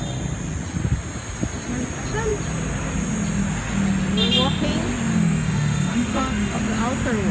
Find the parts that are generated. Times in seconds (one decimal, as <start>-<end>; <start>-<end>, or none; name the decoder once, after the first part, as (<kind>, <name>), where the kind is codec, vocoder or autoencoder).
5.1-6.6 (autoencoder, DAC-VAE)